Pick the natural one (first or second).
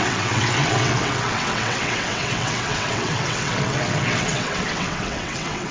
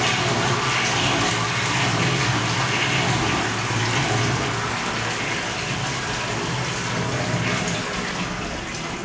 second